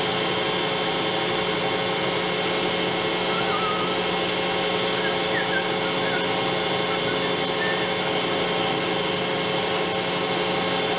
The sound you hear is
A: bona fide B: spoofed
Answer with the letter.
A